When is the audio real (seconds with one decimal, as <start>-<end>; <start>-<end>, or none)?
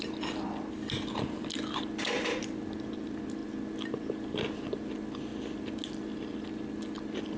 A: 0.0-7.4